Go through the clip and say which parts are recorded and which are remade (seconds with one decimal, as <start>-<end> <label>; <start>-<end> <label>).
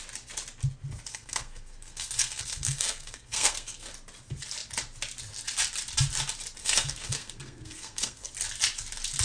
0.0-1.1 recorded; 1.1-3.9 remade; 3.9-6.6 recorded; 6.6-8.3 remade; 8.3-9.2 recorded